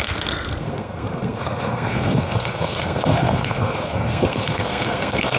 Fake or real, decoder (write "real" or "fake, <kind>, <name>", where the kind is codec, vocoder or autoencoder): fake, codec, SNAC